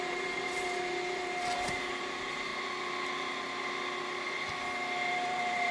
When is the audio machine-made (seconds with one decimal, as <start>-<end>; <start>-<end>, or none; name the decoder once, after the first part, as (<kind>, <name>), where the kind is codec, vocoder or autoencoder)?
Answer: 0.0-2.5 (vocoder, BigVGAN v2); 5.1-5.7